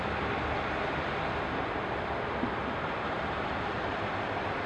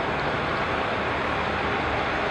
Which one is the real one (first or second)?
second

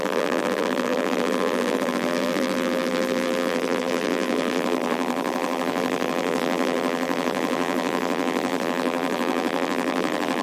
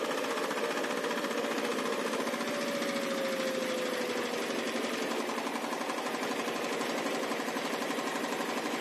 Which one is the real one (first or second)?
second